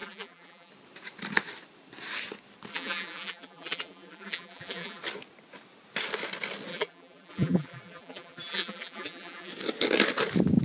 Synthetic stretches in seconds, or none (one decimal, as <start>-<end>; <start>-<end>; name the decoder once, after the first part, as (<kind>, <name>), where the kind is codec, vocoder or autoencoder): 0.0-0.7 (vocoder, BigVGAN v2); 2.7-5.0; 6.7-9.5